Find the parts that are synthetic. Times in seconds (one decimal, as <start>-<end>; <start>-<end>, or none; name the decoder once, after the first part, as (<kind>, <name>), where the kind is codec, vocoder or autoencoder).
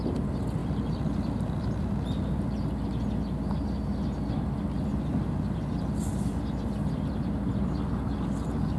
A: none